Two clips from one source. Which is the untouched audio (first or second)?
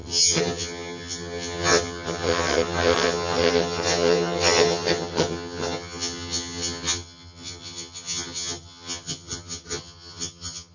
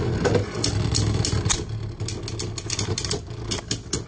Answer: second